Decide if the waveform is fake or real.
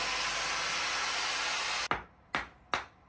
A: real